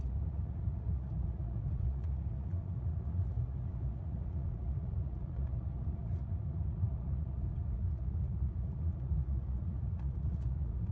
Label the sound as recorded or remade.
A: remade